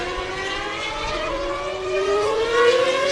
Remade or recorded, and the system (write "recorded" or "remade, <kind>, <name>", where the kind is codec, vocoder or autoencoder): remade, vocoder, Vocos